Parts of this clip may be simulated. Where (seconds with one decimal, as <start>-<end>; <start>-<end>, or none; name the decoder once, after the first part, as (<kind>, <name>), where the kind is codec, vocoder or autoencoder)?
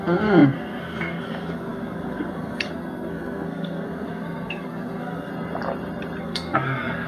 0.0-5.3 (codec, SNAC); 6.2-7.1